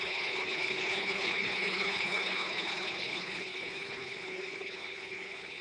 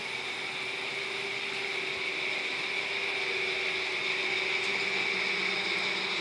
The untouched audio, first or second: second